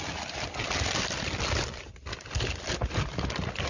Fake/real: real